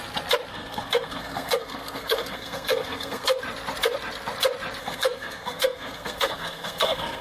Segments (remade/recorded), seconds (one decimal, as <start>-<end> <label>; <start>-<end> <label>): 0.0-0.5 recorded; 0.5-3.4 remade; 3.4-4.8 recorded; 4.8-7.2 remade